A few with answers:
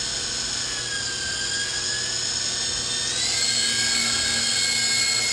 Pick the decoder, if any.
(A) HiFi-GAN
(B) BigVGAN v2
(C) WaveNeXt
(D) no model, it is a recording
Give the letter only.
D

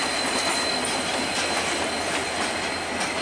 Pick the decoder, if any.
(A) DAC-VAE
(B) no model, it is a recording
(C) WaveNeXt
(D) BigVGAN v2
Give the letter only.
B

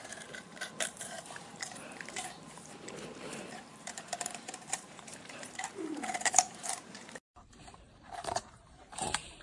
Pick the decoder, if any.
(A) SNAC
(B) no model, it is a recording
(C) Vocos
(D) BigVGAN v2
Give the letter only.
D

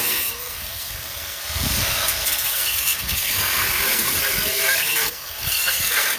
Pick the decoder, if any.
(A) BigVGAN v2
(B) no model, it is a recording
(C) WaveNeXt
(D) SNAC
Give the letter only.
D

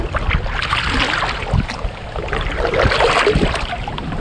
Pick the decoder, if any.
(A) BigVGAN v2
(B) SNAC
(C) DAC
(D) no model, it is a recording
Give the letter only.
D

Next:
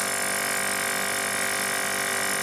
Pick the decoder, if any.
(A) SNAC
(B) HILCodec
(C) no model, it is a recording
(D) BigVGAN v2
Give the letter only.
C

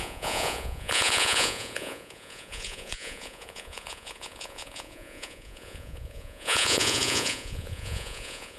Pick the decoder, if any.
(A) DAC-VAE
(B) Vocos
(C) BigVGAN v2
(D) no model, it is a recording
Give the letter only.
B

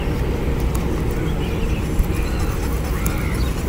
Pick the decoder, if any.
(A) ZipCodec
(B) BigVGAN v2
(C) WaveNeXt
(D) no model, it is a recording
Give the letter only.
D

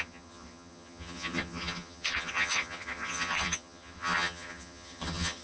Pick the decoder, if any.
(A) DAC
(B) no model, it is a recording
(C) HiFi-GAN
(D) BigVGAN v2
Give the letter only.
C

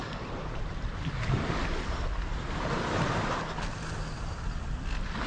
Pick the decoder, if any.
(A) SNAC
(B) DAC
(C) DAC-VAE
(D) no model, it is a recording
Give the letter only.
D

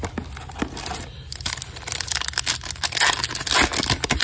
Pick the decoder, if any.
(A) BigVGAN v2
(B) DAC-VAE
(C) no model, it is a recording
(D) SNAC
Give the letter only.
C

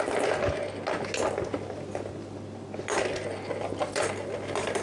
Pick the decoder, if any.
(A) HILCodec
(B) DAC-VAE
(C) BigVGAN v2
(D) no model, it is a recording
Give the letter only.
D